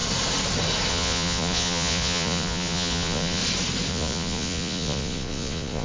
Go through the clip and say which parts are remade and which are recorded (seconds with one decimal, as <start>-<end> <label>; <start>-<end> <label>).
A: 0.0-0.9 recorded; 0.9-3.4 remade; 3.4-3.9 recorded; 3.9-5.8 remade